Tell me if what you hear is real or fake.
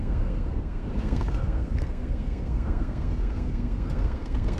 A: fake